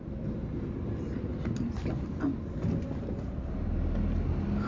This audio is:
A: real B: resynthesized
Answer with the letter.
A